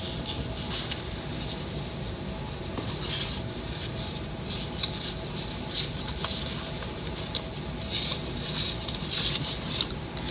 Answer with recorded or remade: recorded